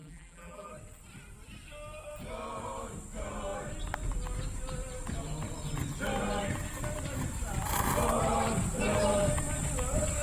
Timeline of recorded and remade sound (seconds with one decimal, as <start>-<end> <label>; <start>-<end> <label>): 0.0-0.7 remade; 0.7-10.2 recorded